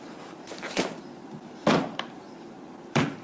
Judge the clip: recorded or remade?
remade